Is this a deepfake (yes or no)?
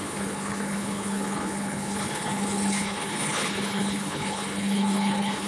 yes